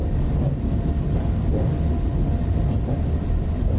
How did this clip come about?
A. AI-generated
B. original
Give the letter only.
B